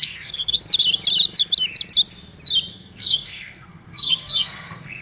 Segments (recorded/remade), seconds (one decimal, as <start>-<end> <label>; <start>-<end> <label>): 0.0-0.6 remade; 0.6-2.7 recorded; 2.7-5.0 remade